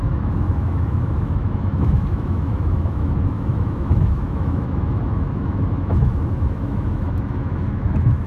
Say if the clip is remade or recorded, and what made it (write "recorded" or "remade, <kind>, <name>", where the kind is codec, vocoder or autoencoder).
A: remade, autoencoder, DAC-VAE